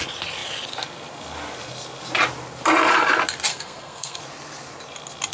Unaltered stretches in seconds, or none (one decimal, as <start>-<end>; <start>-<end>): 0.0-3.5; 4.2-5.3